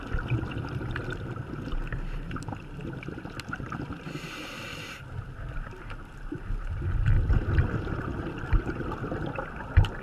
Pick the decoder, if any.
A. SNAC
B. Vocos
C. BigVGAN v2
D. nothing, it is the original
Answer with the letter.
D